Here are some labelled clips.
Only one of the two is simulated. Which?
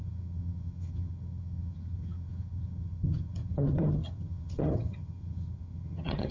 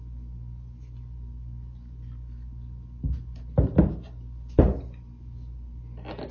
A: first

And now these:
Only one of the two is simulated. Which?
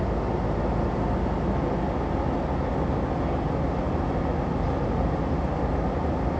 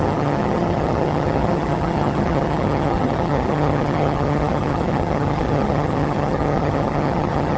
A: second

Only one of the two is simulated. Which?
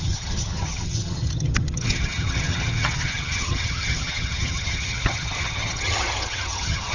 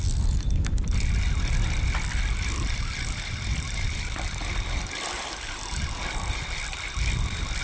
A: first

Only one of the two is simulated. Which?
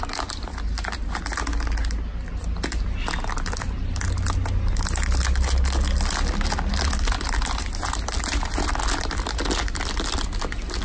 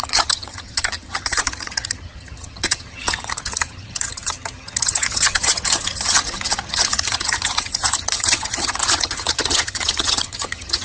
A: second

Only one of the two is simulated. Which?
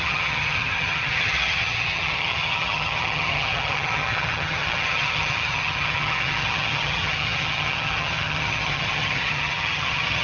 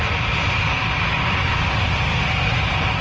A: first